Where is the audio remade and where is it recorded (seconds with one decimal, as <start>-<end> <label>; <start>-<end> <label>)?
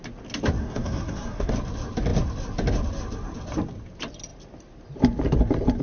0.0-0.6 recorded; 0.6-1.5 remade; 1.5-5.8 recorded